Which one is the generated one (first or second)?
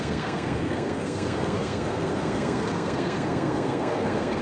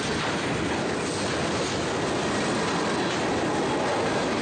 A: first